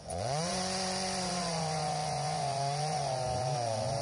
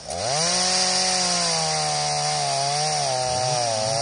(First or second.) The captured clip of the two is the second